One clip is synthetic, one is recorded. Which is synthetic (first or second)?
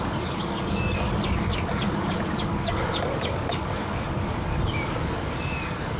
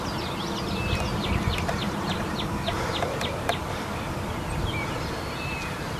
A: first